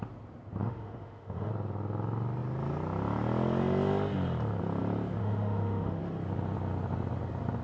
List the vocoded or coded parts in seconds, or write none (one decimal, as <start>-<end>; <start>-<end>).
0.6-1.5; 5.2-6.0